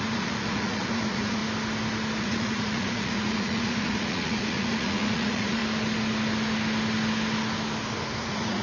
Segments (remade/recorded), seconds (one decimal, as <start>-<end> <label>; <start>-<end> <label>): 0.0-1.4 remade; 1.4-2.2 recorded; 2.2-5.6 remade; 5.6-8.2 recorded; 8.2-8.6 remade